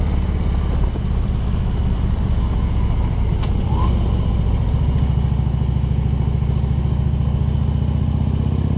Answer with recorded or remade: recorded